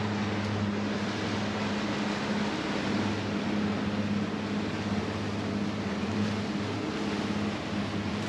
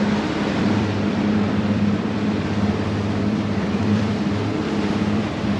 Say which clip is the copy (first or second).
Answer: second